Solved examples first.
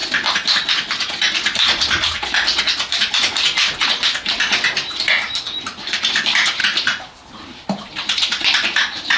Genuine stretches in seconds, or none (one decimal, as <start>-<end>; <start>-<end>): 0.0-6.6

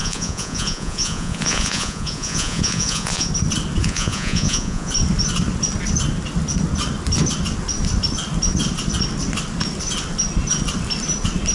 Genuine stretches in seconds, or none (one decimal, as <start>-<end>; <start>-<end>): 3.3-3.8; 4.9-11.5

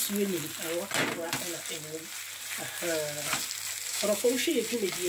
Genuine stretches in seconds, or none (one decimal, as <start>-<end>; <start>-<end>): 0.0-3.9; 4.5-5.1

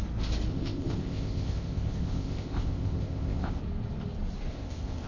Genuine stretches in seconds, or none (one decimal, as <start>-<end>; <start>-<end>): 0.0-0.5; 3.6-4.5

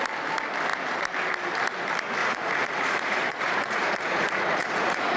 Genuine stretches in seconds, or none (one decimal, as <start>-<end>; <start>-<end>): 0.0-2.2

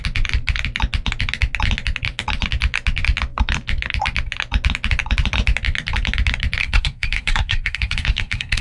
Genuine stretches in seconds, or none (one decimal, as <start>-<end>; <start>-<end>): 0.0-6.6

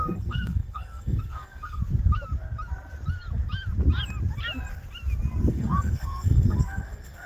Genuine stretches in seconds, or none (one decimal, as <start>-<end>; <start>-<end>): 1.8-5.5

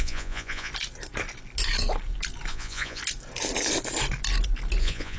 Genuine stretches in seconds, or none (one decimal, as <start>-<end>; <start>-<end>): 0.7-2.5; 3.0-4.8